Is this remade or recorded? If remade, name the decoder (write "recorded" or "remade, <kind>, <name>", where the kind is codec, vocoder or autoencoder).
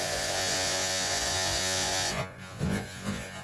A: remade, vocoder, Vocos